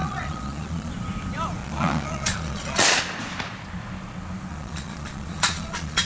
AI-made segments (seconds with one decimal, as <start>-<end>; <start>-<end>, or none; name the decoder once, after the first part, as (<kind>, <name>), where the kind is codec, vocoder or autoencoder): 0.0-0.9 (vocoder, Vocos); 1.6-3.0; 4.5-6.0